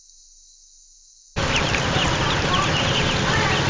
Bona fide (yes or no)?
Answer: yes